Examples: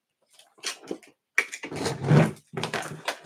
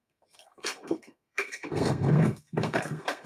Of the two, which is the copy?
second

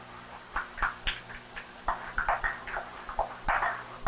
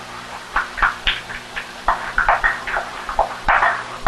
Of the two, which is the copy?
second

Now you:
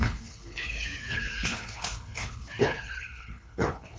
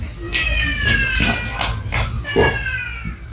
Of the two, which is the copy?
first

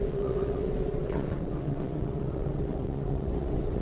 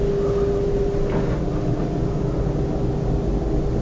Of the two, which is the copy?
first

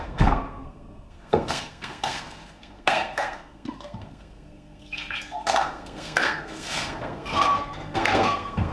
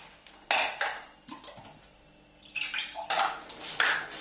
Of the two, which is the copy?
first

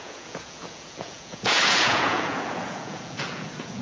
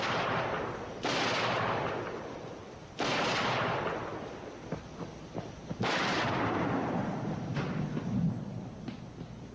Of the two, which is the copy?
first